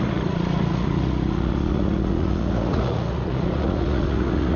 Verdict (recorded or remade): remade